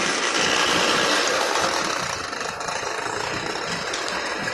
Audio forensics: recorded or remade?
recorded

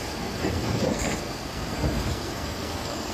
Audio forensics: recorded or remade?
remade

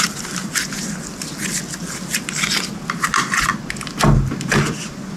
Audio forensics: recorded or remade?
recorded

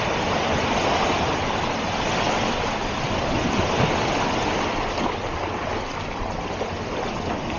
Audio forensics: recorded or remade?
recorded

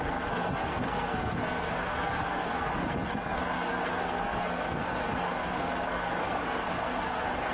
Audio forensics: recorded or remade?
remade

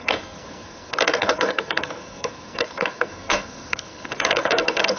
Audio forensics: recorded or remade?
remade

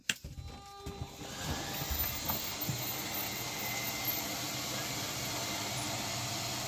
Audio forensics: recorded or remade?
recorded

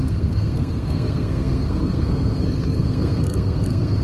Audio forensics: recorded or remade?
remade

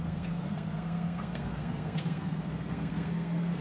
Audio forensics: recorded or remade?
remade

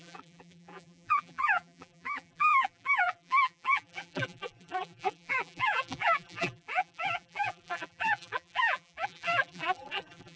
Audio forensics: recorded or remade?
remade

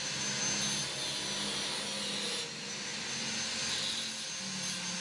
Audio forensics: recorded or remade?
recorded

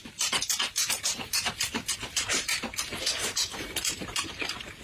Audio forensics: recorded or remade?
remade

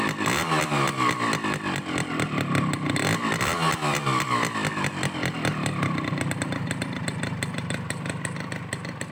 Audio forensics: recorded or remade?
recorded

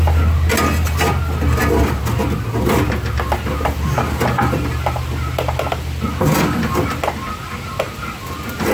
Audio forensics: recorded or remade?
recorded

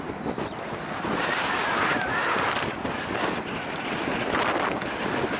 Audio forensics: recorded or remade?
recorded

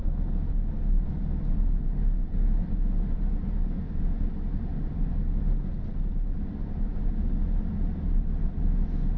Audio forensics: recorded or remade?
recorded